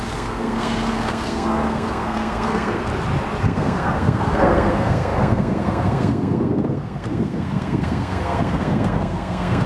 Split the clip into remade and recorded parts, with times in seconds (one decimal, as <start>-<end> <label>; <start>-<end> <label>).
0.0-2.9 remade; 2.9-3.4 recorded; 3.4-9.7 remade